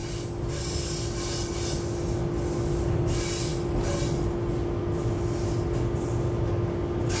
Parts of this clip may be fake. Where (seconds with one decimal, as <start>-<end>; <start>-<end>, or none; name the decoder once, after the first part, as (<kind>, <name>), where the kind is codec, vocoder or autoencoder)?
none